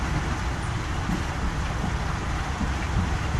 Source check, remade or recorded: recorded